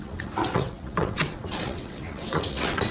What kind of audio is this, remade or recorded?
remade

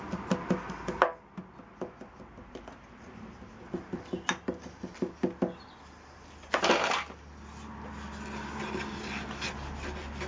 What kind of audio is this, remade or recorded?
recorded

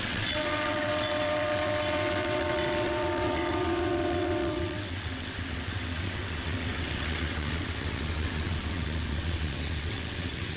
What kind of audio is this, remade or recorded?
remade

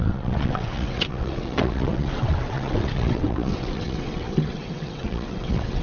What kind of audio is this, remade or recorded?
remade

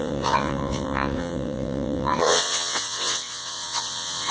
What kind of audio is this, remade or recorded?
remade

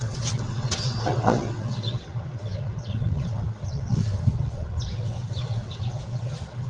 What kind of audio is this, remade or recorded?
remade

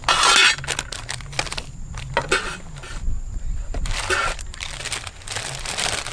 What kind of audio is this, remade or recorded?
recorded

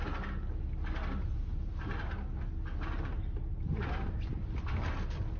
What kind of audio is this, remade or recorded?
recorded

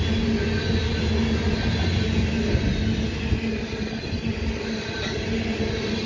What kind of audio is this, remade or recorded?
recorded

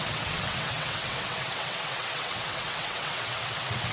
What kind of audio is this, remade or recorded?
remade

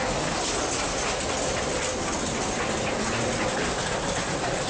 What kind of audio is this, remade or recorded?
recorded